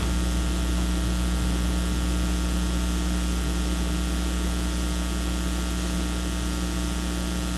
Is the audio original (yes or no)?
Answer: yes